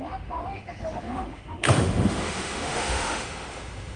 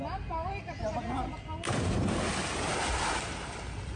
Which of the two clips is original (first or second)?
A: second